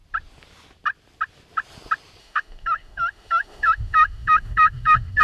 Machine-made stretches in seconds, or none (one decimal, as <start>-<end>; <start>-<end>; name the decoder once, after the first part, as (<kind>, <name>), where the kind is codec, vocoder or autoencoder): 2.2-5.2 (autoencoder, DAC-VAE)